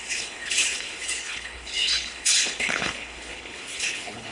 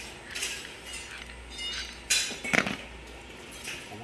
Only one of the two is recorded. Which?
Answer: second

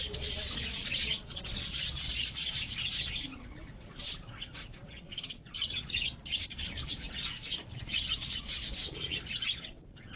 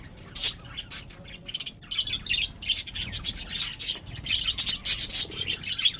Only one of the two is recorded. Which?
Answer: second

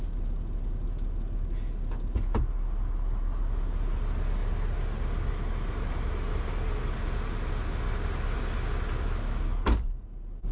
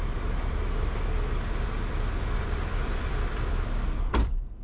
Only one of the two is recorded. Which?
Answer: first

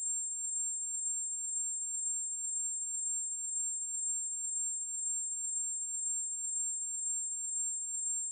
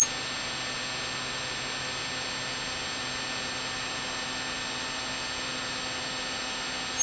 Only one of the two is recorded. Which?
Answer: second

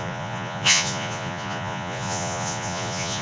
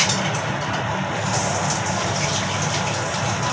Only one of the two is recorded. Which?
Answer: second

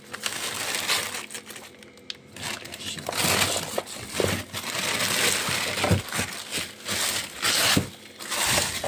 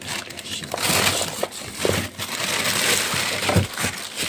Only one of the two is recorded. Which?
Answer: first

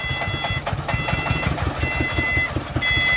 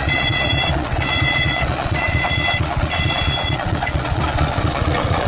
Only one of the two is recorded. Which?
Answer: first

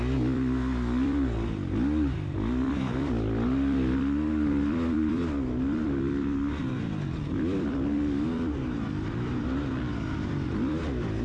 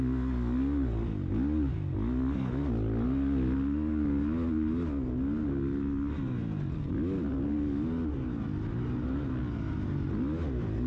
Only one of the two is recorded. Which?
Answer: second